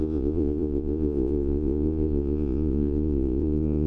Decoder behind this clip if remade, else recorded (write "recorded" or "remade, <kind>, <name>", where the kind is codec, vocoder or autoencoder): remade, vocoder, Vocos